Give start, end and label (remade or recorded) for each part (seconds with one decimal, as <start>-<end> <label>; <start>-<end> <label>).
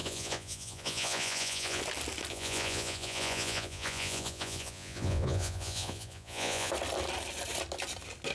0.0-1.8 remade; 1.8-2.3 recorded; 2.3-6.7 remade; 6.7-8.3 recorded